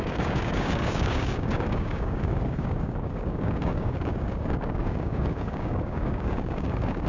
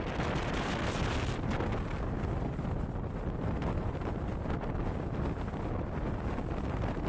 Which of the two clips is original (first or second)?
second